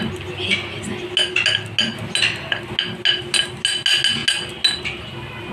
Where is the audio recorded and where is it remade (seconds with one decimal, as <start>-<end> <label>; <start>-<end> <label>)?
0.0-5.5 recorded